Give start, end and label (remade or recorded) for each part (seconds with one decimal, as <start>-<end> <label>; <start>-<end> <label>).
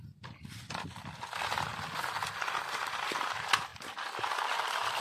0.0-5.0 recorded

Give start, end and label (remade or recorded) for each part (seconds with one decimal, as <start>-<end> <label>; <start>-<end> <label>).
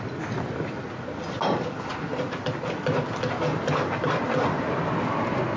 0.0-3.5 recorded; 3.5-4.9 remade; 4.9-5.6 recorded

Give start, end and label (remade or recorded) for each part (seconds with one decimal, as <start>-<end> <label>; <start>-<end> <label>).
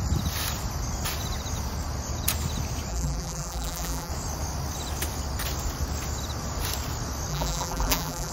0.0-2.9 recorded; 2.9-4.1 remade; 4.1-7.3 recorded; 7.3-8.3 remade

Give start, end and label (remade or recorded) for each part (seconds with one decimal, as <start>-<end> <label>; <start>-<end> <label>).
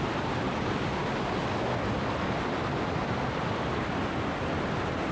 0.0-5.1 recorded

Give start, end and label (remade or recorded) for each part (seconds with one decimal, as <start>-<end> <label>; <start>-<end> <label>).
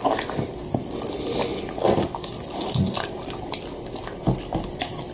0.0-5.1 recorded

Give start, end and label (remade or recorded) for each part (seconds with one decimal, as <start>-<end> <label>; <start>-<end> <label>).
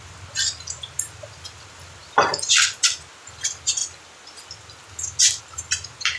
0.0-6.2 recorded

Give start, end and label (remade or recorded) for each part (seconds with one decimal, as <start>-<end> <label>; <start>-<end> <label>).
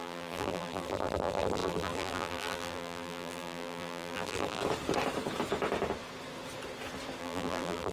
0.0-4.6 remade; 4.6-7.2 recorded; 7.2-7.9 remade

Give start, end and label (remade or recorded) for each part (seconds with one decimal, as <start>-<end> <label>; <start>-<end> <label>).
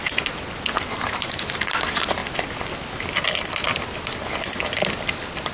0.0-0.7 recorded; 0.7-2.2 remade; 2.2-5.5 recorded